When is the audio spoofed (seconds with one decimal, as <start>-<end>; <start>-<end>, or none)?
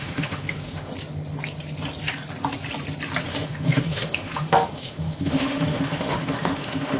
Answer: 0.0-0.9; 3.3-7.0